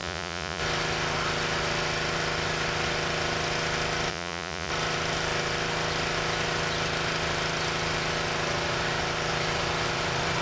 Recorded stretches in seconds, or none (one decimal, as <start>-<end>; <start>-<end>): 0.6-4.1; 4.7-10.4